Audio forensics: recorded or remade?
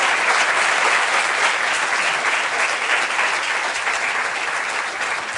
recorded